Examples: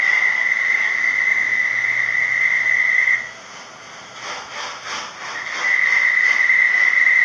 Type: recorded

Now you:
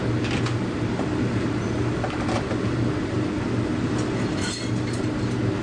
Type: recorded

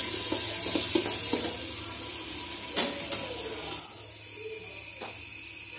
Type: recorded